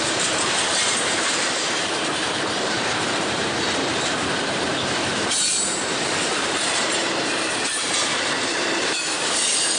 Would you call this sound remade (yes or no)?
yes